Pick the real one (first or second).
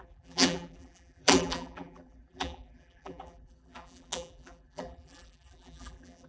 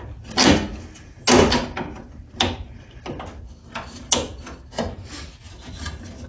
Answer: second